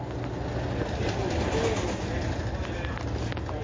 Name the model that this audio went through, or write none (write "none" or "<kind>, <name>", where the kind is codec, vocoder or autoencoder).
none